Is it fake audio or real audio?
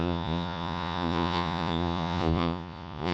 fake